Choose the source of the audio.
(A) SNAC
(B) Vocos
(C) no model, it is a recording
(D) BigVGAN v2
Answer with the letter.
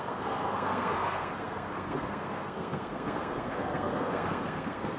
A